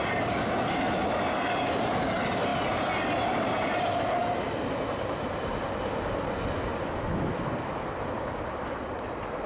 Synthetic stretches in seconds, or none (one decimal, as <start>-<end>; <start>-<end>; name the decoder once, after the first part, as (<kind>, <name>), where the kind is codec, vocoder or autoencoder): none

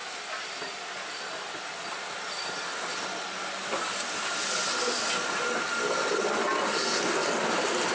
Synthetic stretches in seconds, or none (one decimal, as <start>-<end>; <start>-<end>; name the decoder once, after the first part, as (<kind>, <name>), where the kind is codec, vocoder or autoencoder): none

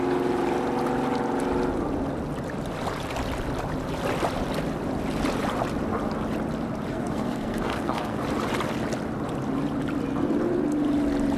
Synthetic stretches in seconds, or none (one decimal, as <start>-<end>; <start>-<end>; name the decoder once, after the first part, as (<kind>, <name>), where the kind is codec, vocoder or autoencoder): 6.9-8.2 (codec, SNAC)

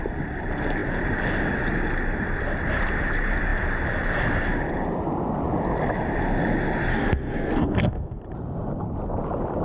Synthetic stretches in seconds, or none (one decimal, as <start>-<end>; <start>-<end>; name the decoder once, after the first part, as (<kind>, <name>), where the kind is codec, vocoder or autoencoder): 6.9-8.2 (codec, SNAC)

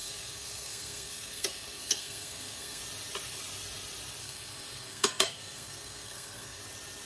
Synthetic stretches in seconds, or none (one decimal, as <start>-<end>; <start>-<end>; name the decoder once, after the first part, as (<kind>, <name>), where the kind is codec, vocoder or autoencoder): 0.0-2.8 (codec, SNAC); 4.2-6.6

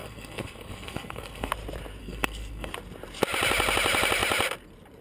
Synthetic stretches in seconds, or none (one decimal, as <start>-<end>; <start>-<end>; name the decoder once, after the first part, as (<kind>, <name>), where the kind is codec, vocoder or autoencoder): 0.0-1.5 (codec, SNAC); 2.0-2.7

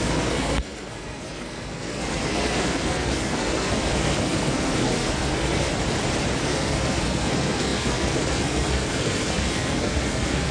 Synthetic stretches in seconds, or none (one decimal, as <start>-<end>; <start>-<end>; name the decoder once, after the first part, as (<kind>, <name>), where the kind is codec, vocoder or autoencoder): 0.0-5.7 (codec, SNAC); 6.4-10.5

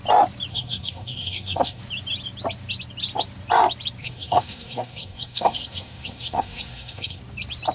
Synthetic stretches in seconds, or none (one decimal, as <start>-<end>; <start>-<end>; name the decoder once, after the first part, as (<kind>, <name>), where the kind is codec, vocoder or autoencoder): 0.5-1.8 (codec, SNAC); 4.0-7.2